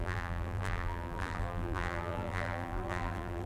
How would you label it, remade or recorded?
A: remade